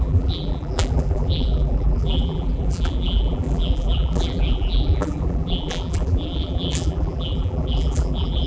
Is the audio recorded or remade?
remade